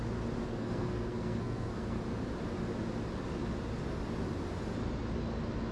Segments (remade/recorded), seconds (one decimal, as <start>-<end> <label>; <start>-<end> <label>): 0.0-0.5 recorded; 0.5-2.0 remade; 2.0-5.7 recorded